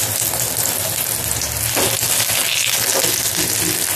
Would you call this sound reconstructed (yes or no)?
no